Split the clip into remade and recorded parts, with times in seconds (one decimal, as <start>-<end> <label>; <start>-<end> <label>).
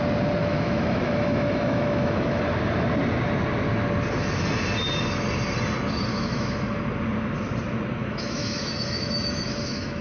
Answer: 0.0-0.4 recorded; 0.4-2.4 remade; 2.4-6.1 recorded; 6.1-6.8 remade; 6.8-8.0 recorded; 8.0-10.0 remade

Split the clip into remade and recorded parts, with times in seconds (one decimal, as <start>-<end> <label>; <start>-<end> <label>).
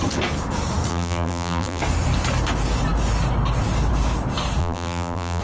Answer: 0.0-0.9 recorded; 0.9-1.8 remade; 1.8-4.6 recorded; 4.6-5.4 remade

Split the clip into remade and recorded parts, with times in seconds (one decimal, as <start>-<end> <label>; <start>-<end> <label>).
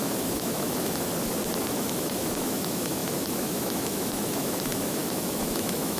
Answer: 0.0-1.1 remade; 1.1-1.7 recorded; 1.7-6.0 remade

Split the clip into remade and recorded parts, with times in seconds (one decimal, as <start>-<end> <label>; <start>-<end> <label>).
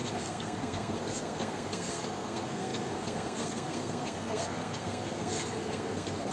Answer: 0.0-6.3 remade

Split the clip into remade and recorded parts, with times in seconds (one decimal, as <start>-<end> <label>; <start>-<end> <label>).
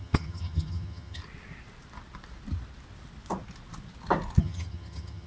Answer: 0.0-1.2 remade; 1.2-4.4 recorded; 4.4-5.3 remade